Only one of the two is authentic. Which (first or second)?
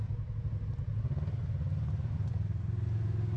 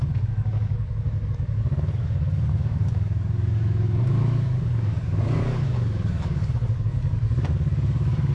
first